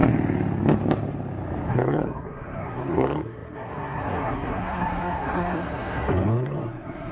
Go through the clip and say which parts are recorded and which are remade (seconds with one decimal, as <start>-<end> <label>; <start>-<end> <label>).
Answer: 0.0-1.7 recorded; 1.7-7.1 remade